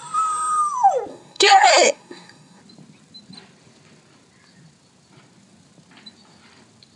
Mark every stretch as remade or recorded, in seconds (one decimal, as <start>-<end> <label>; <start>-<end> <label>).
0.0-1.1 recorded; 1.1-2.6 remade; 2.6-7.0 recorded